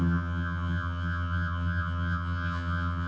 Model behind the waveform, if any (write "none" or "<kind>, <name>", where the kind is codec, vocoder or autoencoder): vocoder, HiFi-GAN